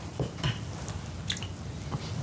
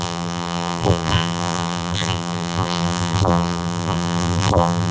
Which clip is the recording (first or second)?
first